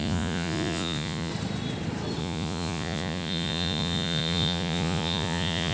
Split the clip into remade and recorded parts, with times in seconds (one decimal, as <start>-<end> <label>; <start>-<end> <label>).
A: 0.0-1.3 remade; 1.3-2.2 recorded; 2.2-5.7 remade